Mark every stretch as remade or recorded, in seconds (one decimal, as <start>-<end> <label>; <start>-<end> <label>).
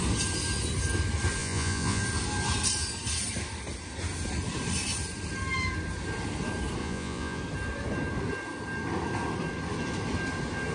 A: 0.0-1.4 recorded; 1.4-2.0 remade; 2.0-6.8 recorded; 6.8-7.4 remade; 7.4-10.7 recorded